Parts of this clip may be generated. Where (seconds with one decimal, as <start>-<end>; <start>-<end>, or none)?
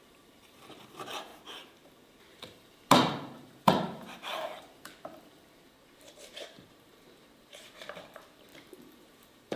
0.0-9.6